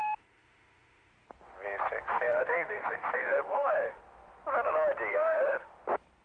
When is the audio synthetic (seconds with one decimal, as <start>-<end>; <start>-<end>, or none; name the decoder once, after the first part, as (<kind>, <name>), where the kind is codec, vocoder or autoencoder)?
0.0-1.1 (autoencoder, DAC-VAE); 2.1-4.0; 5.1-5.7